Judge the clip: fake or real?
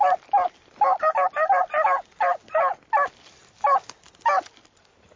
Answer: real